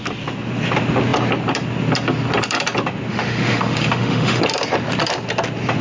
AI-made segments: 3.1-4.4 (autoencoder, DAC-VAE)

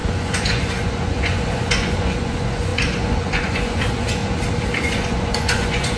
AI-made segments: 0.0-4.2 (vocoder, Vocos); 4.8-6.0